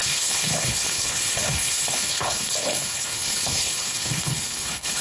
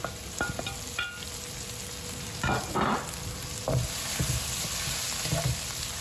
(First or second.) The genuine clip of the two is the second